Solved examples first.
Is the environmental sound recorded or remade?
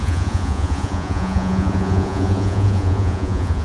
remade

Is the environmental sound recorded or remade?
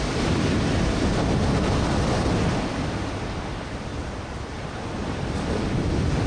recorded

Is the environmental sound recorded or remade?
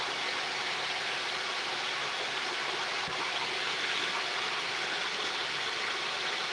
recorded